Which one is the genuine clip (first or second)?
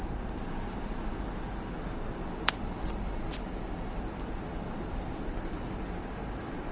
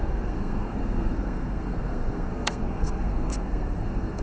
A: first